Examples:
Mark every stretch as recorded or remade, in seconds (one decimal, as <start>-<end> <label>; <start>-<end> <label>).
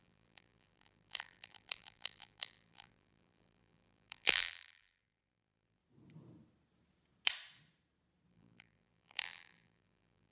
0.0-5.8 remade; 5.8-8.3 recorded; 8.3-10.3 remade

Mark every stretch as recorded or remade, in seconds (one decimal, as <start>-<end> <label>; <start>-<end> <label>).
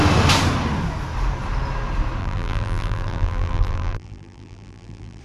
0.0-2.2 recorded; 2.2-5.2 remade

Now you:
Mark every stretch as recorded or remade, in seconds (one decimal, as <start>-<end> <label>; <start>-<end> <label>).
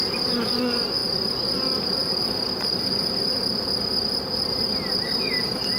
0.0-5.8 recorded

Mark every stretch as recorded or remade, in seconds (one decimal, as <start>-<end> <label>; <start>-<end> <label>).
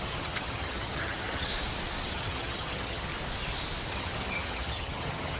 0.0-1.5 remade; 1.5-2.1 recorded; 2.1-3.1 remade; 3.1-3.9 recorded; 3.9-5.4 remade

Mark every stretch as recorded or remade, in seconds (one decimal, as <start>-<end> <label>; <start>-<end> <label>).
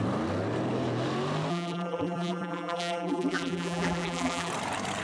0.0-1.5 recorded; 1.5-4.5 remade; 4.5-5.0 recorded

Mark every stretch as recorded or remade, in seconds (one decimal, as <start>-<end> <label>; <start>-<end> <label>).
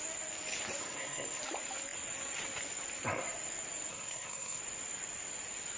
0.0-0.8 recorded; 0.8-1.4 remade; 1.4-3.9 recorded; 3.9-4.6 remade; 4.6-5.8 recorded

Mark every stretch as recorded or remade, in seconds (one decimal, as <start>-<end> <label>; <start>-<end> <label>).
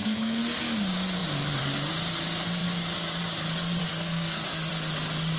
0.0-0.6 remade; 0.6-3.8 recorded; 3.8-4.7 remade; 4.7-5.4 recorded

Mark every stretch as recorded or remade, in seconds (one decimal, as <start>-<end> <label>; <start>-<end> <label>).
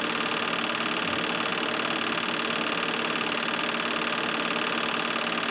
0.0-5.5 recorded